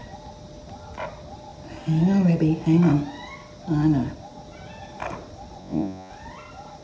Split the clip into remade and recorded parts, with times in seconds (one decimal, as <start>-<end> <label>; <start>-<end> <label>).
0.0-5.6 recorded; 5.6-6.1 remade; 6.1-6.8 recorded

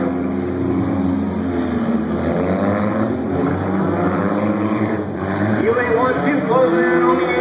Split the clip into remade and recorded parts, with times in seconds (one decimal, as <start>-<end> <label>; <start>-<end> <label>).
0.0-2.9 recorded; 2.9-5.9 remade; 5.9-7.4 recorded

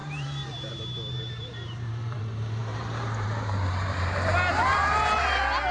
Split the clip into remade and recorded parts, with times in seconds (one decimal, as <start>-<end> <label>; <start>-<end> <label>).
0.0-2.2 remade; 2.2-2.6 recorded; 2.6-5.3 remade; 5.3-5.7 recorded

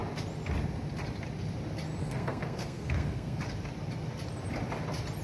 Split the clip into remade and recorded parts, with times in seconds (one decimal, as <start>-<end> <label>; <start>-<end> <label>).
0.0-2.0 recorded; 2.0-3.4 remade; 3.4-5.2 recorded